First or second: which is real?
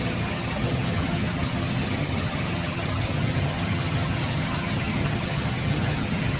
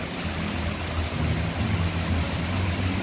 second